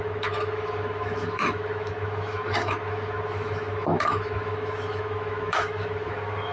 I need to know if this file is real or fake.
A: fake